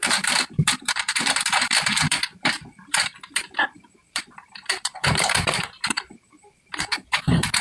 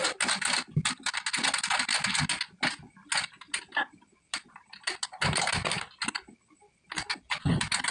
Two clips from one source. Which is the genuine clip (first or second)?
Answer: second